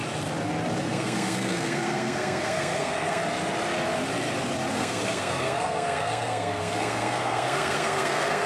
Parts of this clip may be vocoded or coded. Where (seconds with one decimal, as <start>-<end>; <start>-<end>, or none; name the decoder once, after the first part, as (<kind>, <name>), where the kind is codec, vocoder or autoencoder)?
0.8-3.2 (codec, SNAC); 4.7-8.5